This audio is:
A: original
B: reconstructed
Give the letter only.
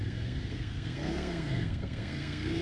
B